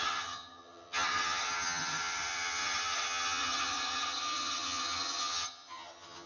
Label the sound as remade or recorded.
remade